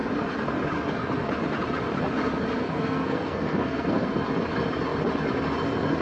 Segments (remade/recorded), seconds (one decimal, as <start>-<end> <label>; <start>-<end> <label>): 0.0-2.6 recorded; 2.6-4.1 remade; 4.1-6.0 recorded